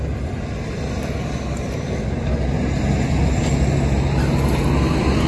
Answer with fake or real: real